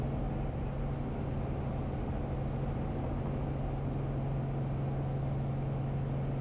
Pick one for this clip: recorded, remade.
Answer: recorded